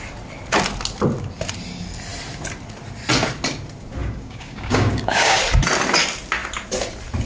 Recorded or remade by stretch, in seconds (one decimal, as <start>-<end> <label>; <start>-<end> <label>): 0.0-4.0 recorded; 4.0-5.4 remade; 5.4-7.3 recorded